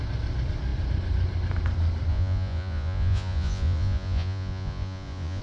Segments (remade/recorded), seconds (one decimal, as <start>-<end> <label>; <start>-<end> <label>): 0.0-2.1 recorded; 2.1-5.4 remade